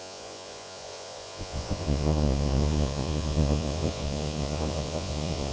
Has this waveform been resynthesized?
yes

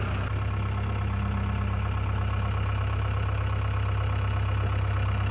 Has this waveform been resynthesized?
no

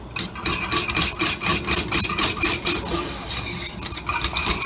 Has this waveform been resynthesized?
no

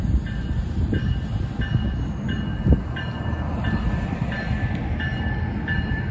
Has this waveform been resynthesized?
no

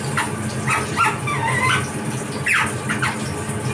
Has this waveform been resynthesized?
no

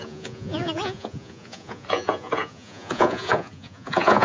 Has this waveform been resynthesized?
yes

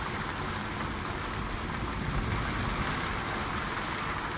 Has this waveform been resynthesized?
no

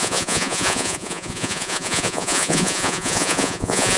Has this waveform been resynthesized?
yes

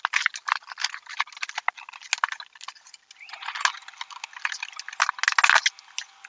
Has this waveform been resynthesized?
no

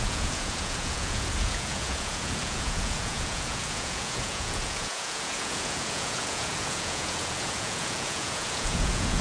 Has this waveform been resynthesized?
yes